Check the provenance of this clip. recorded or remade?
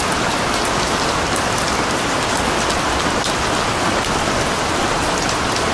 recorded